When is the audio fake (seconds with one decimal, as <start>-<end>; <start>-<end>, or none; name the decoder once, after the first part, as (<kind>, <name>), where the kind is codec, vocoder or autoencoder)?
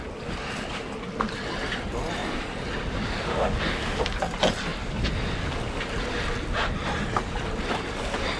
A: 3.3-4.0 (codec, DAC)